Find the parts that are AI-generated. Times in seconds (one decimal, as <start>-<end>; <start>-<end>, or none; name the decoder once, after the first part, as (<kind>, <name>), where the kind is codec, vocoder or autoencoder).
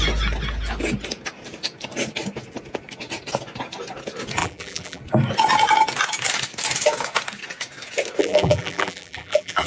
4.4-5.0 (vocoder, BigVGAN v2); 8.2-9.7